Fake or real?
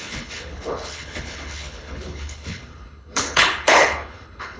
fake